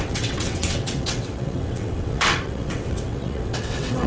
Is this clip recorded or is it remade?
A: remade